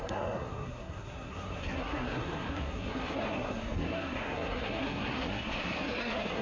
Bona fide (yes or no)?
no